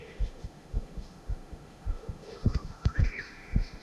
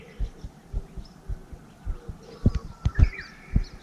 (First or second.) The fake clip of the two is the first